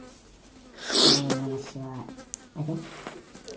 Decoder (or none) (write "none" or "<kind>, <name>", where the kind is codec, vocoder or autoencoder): none